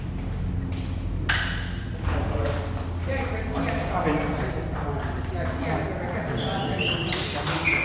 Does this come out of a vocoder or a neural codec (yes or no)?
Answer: no